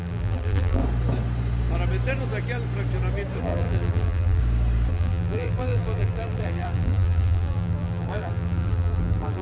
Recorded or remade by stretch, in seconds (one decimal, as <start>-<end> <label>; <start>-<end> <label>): 0.0-0.8 remade; 0.8-3.4 recorded; 3.4-4.4 remade; 4.4-4.9 recorded; 4.9-9.4 remade